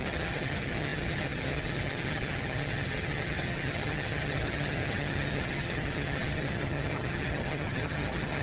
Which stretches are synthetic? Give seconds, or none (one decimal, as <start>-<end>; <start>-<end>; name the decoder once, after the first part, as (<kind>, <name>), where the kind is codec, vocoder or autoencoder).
0.0-8.4 (vocoder, HiFi-GAN)